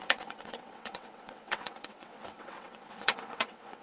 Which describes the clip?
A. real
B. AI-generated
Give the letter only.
B